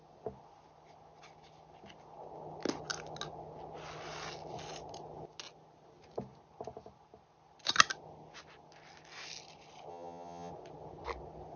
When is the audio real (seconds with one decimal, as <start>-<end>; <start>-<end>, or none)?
0.0-9.9; 10.5-11.6